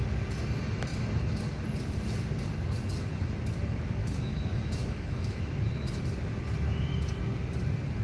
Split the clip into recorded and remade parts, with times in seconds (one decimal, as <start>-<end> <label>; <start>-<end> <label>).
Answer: 0.0-4.0 recorded; 4.0-5.7 remade; 5.7-8.0 recorded

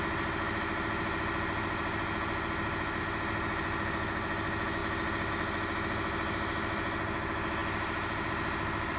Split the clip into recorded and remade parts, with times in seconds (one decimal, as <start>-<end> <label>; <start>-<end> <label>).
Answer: 0.0-9.0 recorded

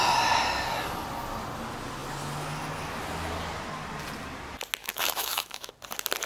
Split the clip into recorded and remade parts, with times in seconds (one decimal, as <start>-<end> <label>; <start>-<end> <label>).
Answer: 0.0-4.8 recorded; 4.8-5.7 remade; 5.7-6.3 recorded

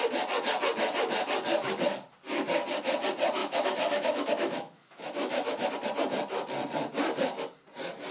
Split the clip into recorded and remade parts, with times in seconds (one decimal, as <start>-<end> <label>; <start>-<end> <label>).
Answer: 0.0-3.4 recorded; 3.4-5.7 remade; 5.7-8.1 recorded

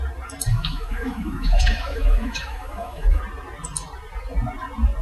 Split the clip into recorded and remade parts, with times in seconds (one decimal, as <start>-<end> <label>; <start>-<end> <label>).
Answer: 0.0-0.5 recorded; 0.5-3.2 remade; 3.2-5.0 recorded

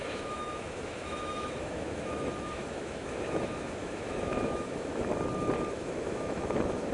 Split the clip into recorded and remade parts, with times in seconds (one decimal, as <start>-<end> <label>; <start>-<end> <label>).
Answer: 0.0-5.1 remade; 5.1-5.7 recorded; 5.7-6.9 remade